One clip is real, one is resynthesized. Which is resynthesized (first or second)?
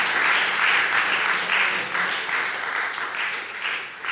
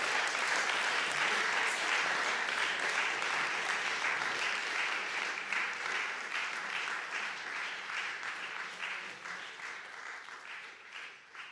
second